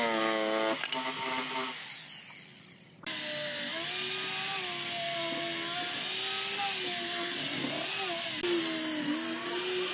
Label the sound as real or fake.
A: real